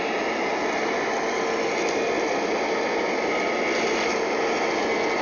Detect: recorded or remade recorded